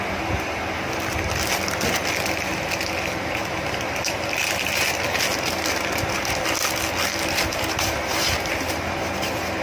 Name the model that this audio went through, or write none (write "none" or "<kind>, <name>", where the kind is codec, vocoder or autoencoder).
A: none